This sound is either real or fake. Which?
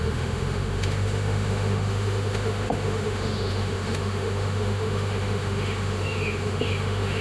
fake